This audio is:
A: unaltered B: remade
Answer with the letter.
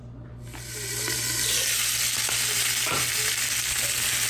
A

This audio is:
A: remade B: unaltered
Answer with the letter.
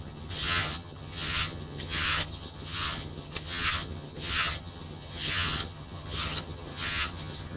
A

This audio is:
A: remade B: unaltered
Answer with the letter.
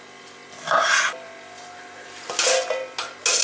B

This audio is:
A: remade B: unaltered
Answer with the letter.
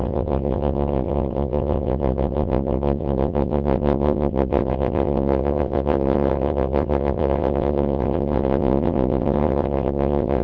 A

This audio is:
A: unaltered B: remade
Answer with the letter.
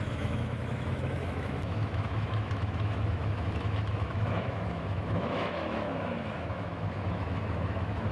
B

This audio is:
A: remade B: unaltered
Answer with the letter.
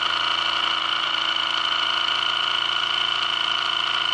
B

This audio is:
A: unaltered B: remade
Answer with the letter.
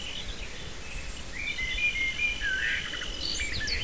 A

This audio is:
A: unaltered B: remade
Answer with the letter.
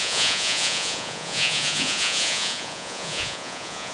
B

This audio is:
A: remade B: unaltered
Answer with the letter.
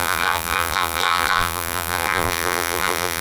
A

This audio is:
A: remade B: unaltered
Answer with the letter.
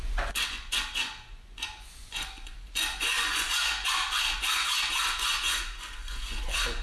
A